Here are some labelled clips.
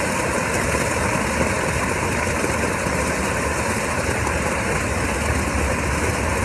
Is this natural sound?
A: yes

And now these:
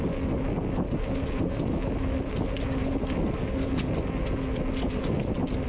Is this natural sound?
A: yes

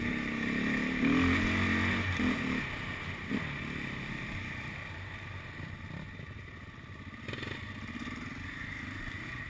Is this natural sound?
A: yes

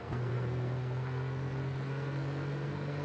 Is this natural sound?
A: no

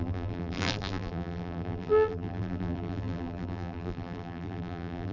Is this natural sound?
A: no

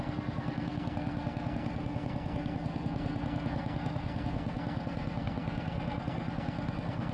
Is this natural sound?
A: no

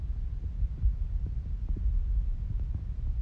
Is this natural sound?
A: yes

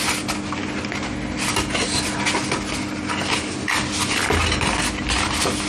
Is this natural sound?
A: yes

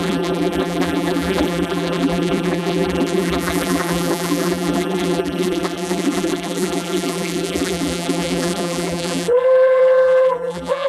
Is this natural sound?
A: no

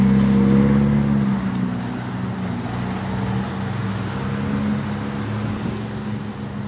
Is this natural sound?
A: yes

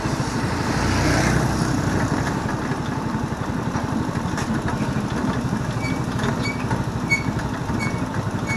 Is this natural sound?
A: yes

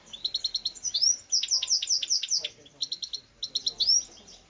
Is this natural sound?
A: no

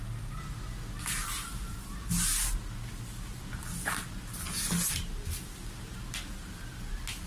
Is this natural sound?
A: yes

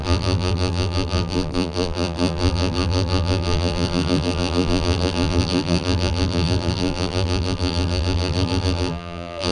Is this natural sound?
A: no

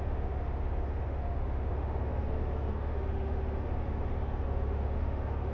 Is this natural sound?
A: no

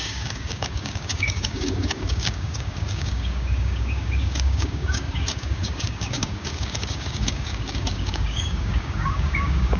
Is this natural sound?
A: no